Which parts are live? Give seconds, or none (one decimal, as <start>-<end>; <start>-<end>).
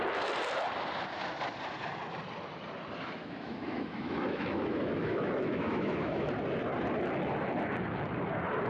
0.0-3.2; 6.3-8.7